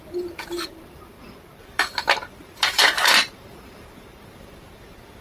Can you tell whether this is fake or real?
fake